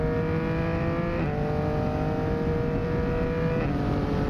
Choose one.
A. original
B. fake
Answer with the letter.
A